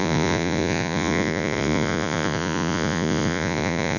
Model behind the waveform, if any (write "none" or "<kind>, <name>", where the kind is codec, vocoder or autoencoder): vocoder, Vocos